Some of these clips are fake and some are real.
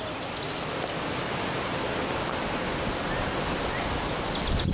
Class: real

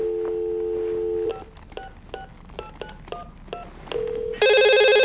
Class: real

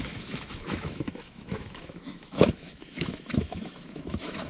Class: fake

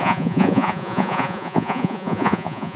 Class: fake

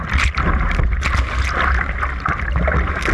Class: real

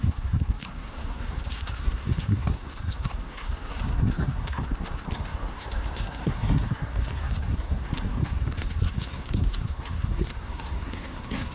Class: fake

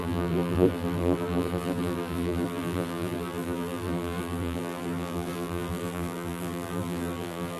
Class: fake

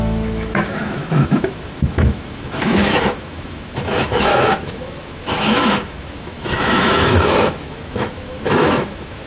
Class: fake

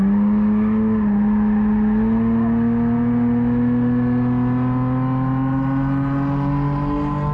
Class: real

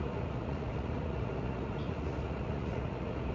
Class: fake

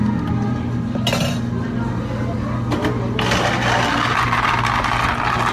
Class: real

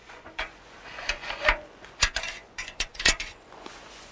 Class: fake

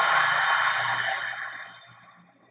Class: real